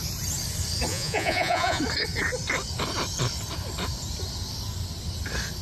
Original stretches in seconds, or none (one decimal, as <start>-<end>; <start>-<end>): 0.0-0.9; 1.8-5.6

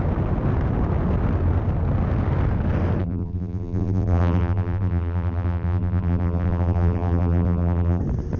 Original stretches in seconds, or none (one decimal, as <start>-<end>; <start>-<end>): 0.0-3.0; 8.0-8.4

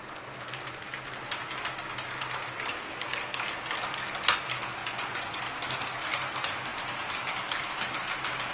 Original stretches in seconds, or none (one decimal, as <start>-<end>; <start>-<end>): 0.0-4.8; 5.4-8.5

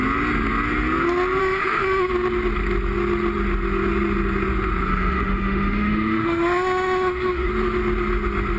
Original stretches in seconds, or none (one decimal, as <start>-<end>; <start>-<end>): 0.0-1.4; 2.1-4.9; 7.5-8.6

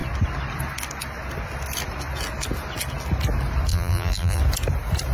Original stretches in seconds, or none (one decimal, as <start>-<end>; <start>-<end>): 0.0-3.7; 4.4-5.1

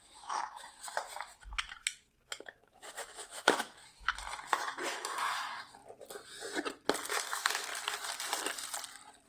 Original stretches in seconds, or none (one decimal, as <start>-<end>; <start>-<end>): 5.8-7.1; 7.7-9.3

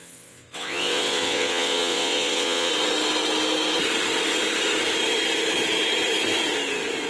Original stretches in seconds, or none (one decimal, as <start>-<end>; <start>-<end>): 2.7-7.1